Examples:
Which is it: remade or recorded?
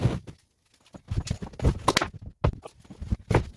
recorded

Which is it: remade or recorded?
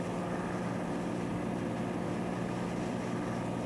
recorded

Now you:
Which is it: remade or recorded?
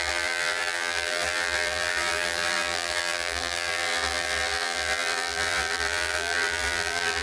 remade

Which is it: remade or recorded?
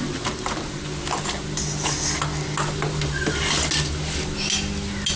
recorded